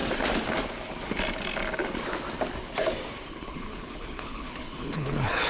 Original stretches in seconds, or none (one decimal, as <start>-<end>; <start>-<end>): 0.0-3.3